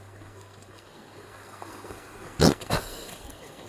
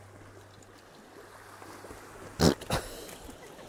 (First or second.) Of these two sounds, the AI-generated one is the first